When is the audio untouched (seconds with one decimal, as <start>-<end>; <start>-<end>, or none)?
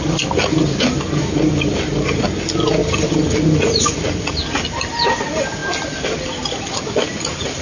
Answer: 0.0-7.6